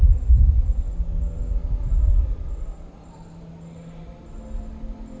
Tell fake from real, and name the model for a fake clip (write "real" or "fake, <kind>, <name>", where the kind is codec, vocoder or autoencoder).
real